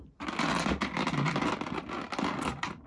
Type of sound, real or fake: real